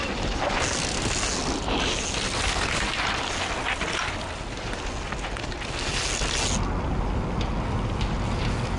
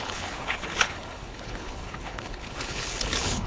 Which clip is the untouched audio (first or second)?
first